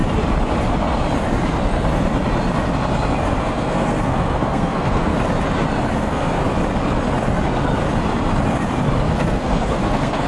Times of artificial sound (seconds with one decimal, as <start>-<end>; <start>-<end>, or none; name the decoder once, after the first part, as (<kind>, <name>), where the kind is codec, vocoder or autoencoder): 3.4-5.1 (codec, SNAC); 6.0-6.4; 9.1-10.3